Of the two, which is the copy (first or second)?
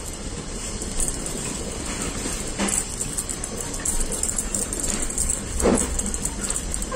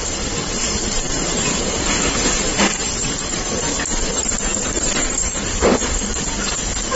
second